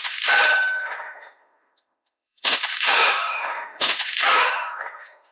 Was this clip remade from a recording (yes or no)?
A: yes